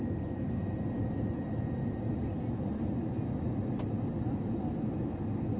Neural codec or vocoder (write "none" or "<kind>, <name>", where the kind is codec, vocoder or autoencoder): none